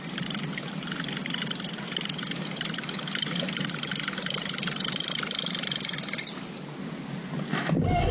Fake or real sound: real